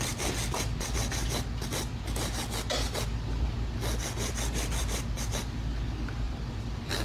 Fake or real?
real